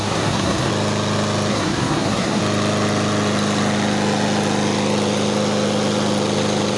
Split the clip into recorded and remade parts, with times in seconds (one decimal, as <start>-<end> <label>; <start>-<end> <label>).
0.0-0.7 remade; 0.7-1.5 recorded; 1.5-2.4 remade; 2.4-6.8 recorded